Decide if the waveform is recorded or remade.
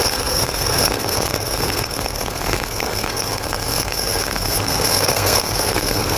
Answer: remade